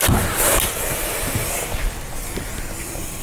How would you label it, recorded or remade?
recorded